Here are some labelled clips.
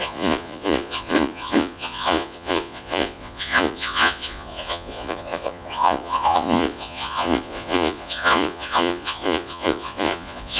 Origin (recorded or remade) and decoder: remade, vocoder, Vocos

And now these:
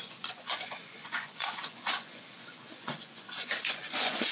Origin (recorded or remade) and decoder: remade, vocoder, Vocos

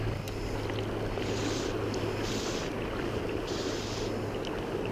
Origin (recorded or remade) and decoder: recorded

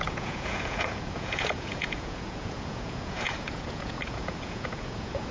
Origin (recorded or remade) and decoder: remade, vocoder, Vocos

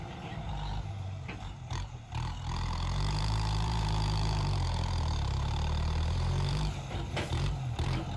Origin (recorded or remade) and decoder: remade, vocoder, BigVGAN v2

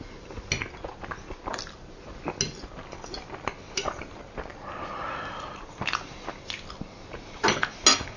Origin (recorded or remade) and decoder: recorded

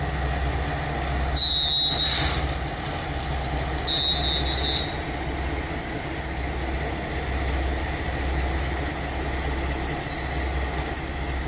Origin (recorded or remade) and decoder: recorded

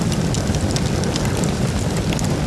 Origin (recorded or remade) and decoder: recorded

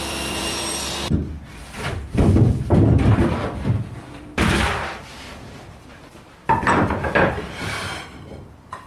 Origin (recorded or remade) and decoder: remade, vocoder, BigVGAN v2